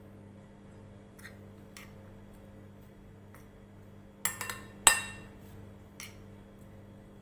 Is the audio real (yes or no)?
yes